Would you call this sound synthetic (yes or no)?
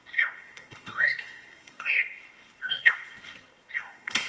yes